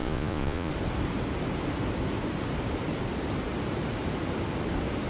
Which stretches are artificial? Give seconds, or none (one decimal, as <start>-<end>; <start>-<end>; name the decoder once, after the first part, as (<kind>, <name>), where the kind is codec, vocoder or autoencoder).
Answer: 0.0-0.7 (vocoder, Vocos)